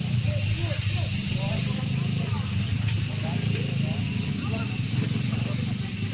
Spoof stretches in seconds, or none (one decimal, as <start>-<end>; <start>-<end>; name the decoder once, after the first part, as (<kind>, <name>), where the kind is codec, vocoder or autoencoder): none